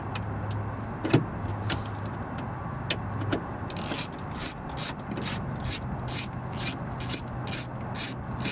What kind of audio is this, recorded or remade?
recorded